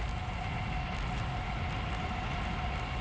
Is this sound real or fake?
real